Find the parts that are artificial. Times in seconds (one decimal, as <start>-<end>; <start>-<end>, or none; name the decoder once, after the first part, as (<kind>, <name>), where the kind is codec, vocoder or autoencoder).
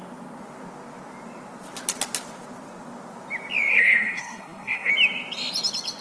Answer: 3.7-4.9 (codec, SNAC)